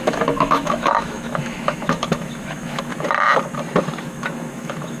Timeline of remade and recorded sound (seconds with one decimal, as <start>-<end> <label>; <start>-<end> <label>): 0.0-2.9 remade; 2.9-4.0 recorded; 4.0-5.0 remade